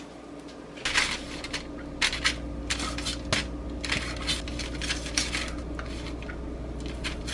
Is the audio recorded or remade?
recorded